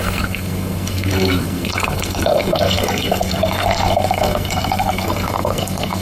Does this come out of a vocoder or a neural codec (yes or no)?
yes